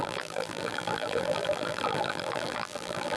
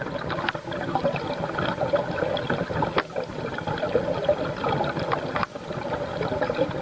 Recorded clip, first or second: second